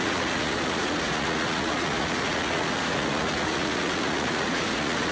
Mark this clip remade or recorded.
remade